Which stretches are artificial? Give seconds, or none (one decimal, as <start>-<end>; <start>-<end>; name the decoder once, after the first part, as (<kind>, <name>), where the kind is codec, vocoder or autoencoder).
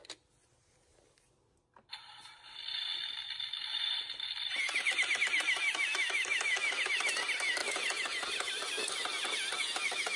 none